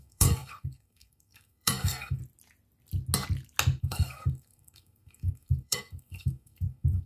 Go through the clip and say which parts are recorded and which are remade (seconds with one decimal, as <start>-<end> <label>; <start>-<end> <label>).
0.0-2.2 remade; 2.2-3.8 recorded; 3.8-7.1 remade